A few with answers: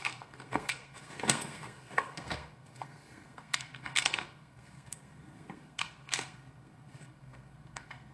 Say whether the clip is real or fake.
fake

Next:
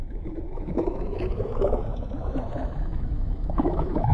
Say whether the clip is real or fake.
fake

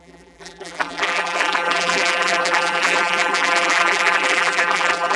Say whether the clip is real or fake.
fake